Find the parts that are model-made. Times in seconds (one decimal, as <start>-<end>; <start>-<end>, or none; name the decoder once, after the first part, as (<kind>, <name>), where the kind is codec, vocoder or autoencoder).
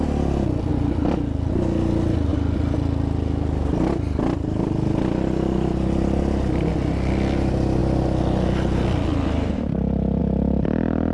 none